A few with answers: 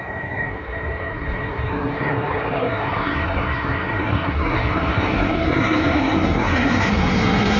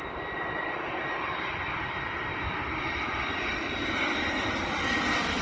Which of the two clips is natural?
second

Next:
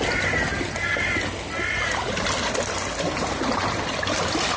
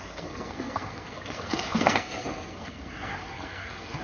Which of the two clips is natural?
first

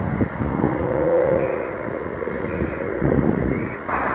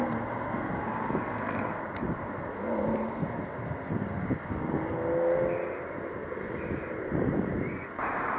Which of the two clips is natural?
second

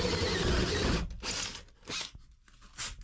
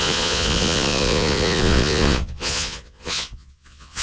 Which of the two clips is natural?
first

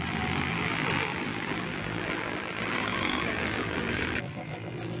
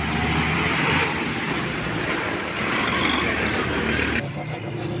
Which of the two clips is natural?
second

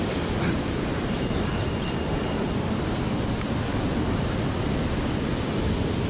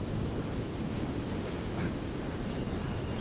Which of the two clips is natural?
second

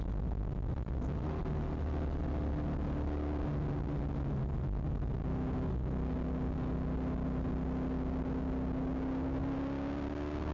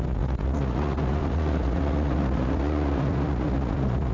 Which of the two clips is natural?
first